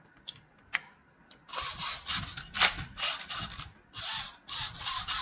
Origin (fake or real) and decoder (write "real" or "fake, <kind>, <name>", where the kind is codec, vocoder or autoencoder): real